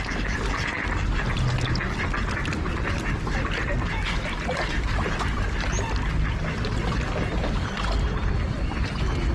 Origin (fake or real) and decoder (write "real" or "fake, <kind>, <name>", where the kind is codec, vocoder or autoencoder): real